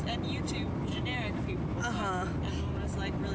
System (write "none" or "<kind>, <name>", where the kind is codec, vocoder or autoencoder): none